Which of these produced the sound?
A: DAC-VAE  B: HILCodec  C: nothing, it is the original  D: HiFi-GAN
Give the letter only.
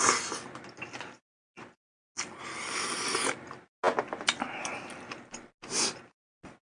C